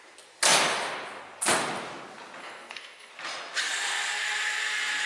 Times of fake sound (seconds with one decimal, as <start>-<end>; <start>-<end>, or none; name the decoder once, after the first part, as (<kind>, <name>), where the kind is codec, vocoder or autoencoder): 2.4-3.1 (codec, SNAC)